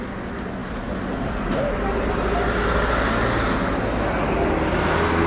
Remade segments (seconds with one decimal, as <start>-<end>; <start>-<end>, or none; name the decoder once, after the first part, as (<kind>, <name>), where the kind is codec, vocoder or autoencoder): none